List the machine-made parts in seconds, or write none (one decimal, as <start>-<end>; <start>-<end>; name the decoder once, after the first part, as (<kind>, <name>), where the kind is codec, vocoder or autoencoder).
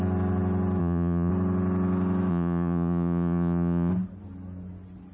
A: 0.8-1.3 (vocoder, Vocos); 2.3-3.9